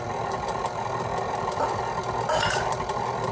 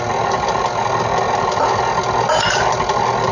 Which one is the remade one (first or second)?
first